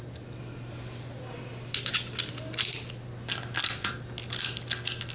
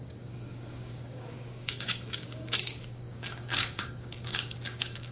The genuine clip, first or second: first